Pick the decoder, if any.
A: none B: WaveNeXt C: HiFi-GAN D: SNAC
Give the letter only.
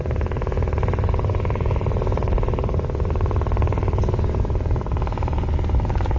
A